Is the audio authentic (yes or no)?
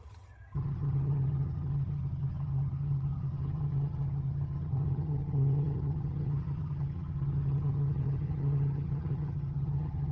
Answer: no